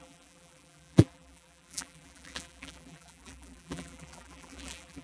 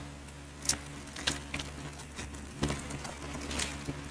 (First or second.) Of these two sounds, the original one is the second